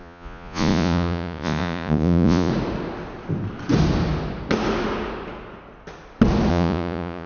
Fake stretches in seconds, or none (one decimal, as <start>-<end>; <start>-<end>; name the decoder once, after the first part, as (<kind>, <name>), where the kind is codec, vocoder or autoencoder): 0.0-2.5 (vocoder, Vocos); 6.5-7.3